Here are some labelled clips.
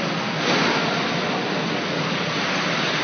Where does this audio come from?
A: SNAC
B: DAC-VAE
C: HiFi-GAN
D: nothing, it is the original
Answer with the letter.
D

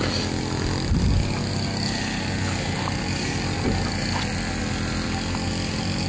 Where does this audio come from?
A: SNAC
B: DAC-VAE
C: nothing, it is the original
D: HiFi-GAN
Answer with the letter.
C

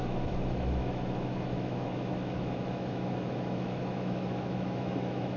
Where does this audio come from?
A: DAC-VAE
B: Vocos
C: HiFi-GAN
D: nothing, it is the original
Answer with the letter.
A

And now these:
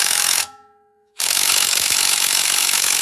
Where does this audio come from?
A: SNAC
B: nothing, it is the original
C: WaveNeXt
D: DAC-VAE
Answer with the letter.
D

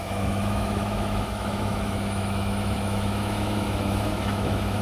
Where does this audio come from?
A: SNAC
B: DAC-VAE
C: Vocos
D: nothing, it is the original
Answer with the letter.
B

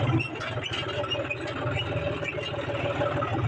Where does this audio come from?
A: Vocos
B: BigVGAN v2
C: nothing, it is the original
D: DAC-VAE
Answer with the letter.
C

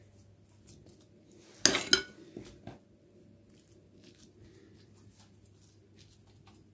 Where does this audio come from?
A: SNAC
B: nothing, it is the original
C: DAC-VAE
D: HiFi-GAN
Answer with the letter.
B